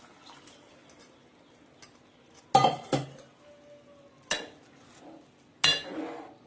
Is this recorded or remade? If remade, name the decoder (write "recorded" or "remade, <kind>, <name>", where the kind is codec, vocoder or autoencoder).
recorded